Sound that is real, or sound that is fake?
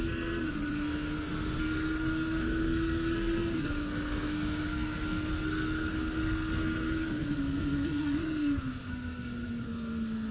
fake